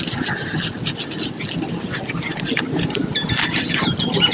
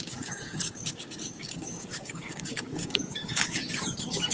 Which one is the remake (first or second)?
second